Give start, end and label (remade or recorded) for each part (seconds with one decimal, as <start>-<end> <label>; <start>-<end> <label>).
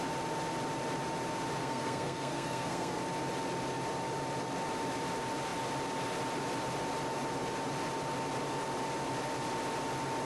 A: 0.0-1.6 recorded; 1.6-3.0 remade; 3.0-10.2 recorded